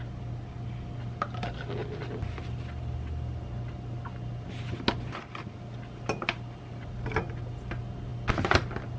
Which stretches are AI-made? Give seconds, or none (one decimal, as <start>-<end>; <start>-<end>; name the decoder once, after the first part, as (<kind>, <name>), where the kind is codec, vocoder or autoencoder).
none

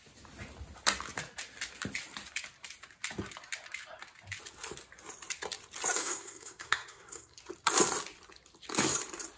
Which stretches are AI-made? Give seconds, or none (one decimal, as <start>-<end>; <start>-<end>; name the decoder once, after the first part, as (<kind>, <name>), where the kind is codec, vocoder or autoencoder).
6.0-7.4 (codec, SNAC)

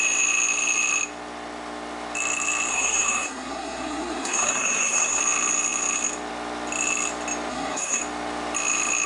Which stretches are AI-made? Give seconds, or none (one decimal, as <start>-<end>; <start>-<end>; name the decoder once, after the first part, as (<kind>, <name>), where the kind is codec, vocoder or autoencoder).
2.7-5.2 (codec, SNAC); 7.5-8.0

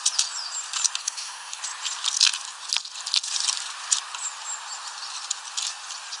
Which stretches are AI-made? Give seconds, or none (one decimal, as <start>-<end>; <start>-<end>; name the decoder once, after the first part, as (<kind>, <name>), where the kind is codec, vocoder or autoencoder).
1.0-1.6 (codec, SNAC)

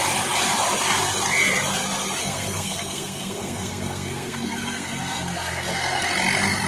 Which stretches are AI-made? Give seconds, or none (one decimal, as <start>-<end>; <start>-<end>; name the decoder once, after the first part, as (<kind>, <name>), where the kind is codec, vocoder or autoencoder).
2.2-6.1 (codec, SNAC)

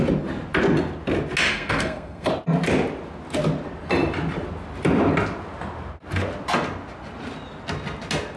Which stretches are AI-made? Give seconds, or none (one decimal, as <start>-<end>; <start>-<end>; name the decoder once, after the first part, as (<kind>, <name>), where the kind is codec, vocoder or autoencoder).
1.5-2.3 (codec, SNAC)